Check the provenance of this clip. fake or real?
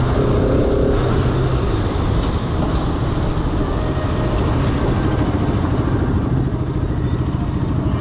real